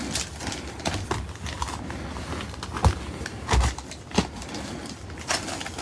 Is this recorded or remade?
recorded